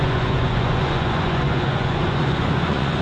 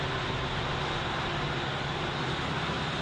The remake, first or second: first